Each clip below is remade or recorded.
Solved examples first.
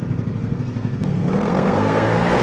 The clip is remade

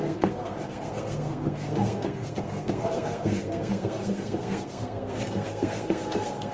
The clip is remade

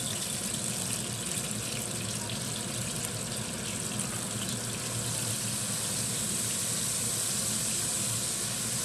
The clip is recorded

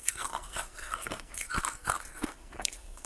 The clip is remade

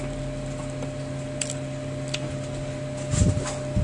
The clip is recorded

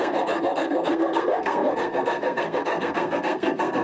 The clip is remade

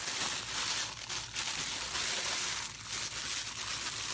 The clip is recorded